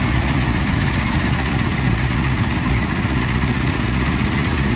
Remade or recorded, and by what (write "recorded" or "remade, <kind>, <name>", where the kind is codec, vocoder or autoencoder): remade, vocoder, Vocos